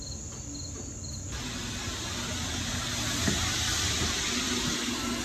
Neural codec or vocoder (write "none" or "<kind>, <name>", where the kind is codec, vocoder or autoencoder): none